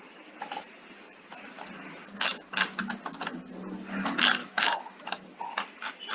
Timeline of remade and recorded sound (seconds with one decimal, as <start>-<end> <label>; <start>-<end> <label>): 0.0-4.4 recorded; 4.4-5.3 remade; 5.3-6.1 recorded